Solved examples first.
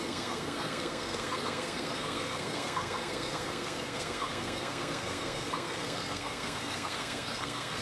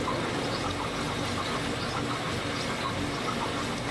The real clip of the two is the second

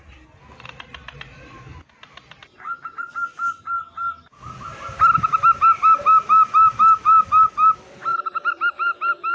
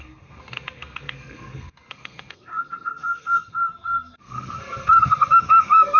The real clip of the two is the first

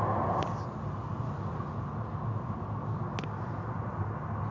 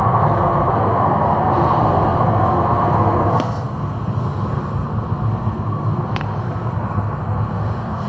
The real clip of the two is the first